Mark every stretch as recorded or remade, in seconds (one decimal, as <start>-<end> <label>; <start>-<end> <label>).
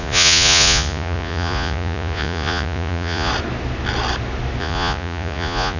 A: 0.0-3.3 remade; 3.3-4.6 recorded; 4.6-5.8 remade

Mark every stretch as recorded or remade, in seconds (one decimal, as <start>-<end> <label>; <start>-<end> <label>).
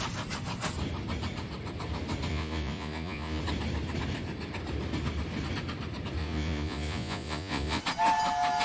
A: 0.0-2.3 recorded; 2.3-3.4 remade; 3.4-6.2 recorded; 6.2-7.8 remade; 7.8-8.6 recorded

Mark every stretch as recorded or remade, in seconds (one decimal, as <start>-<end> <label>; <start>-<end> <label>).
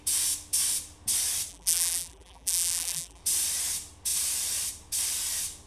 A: 0.0-1.5 recorded; 1.5-3.2 remade; 3.2-5.7 recorded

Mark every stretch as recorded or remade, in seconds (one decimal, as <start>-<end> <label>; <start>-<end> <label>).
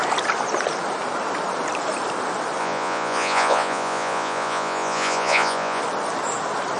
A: 0.0-2.6 recorded; 2.6-5.8 remade; 5.8-6.8 recorded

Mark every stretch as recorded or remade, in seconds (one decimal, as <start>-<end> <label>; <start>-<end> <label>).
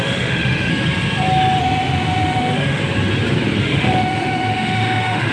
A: 0.0-0.7 remade; 0.7-1.6 recorded; 1.6-2.8 remade; 2.8-3.6 recorded; 3.6-5.3 remade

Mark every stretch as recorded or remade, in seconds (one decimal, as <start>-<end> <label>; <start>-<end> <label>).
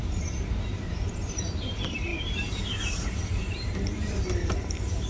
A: 0.0-5.1 remade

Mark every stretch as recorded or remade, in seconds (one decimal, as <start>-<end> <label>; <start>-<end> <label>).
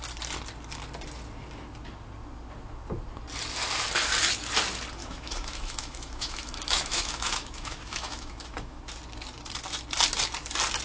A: 0.0-5.0 recorded; 5.0-8.8 remade; 8.8-10.8 recorded